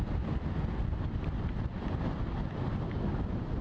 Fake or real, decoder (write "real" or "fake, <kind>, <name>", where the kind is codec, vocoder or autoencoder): real